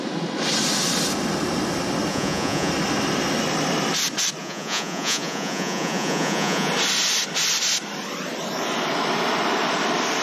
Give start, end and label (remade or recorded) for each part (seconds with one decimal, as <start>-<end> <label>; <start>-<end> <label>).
0.0-2.1 recorded; 2.1-2.7 remade; 2.7-4.4 recorded; 4.4-6.7 remade; 6.7-10.2 recorded

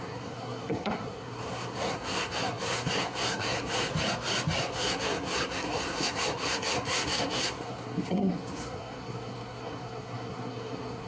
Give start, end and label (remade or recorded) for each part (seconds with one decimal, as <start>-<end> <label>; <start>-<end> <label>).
0.0-3.9 remade; 3.9-4.6 recorded; 4.6-11.1 remade